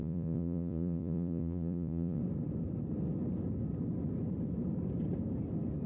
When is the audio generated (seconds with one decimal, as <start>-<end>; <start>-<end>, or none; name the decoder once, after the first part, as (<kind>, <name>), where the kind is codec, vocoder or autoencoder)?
0.0-2.2 (vocoder, Vocos)